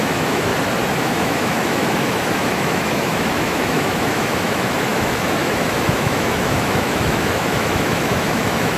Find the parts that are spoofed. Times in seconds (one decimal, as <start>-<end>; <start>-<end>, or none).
0.0-0.5; 1.0-8.8